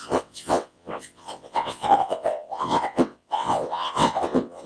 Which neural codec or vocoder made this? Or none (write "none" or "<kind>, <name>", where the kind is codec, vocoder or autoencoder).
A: vocoder, WaveNeXt